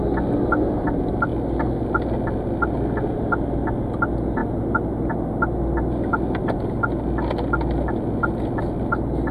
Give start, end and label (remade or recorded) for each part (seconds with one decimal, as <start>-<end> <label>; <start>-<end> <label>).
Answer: 0.0-9.3 recorded

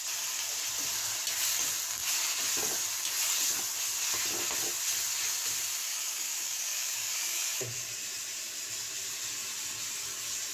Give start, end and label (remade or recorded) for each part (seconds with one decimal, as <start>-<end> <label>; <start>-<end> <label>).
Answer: 0.0-5.9 recorded; 5.9-7.9 remade; 7.9-10.5 recorded

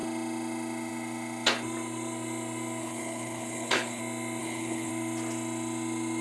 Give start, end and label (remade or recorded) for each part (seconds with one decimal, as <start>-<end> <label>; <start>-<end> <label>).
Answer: 0.0-2.8 recorded; 2.8-4.0 remade; 4.0-4.4 recorded; 4.4-4.9 remade; 4.9-6.2 recorded

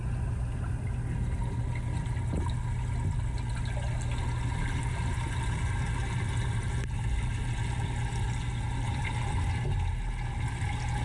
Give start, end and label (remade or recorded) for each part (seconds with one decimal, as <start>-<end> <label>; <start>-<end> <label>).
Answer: 0.0-8.9 recorded; 8.9-9.4 remade; 9.4-11.0 recorded